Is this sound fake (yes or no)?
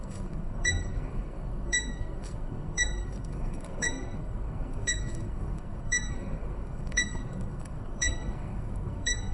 yes